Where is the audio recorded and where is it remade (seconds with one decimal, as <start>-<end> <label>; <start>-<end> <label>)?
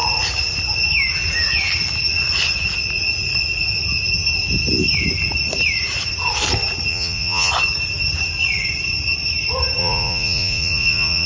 0.0-6.9 recorded; 6.9-7.5 remade; 7.5-9.8 recorded; 9.8-11.3 remade